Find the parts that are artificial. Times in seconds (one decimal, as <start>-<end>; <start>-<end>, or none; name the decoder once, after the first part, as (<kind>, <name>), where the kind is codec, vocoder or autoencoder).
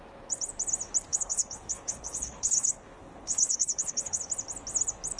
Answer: 1.1-4.2 (codec, HILCodec)